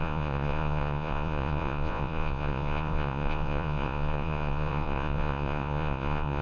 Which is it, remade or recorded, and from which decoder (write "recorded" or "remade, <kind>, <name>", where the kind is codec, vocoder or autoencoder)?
remade, vocoder, Vocos